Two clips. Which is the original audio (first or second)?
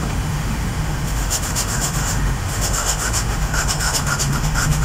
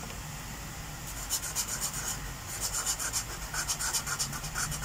second